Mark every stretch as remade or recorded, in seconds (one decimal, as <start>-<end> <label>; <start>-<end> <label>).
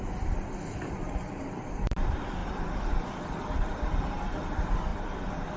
0.0-2.4 remade; 2.4-3.1 recorded; 3.1-4.9 remade; 4.9-5.6 recorded